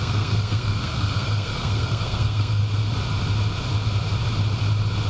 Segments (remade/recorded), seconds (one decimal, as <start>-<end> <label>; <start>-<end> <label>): 0.0-2.6 remade; 2.6-5.1 recorded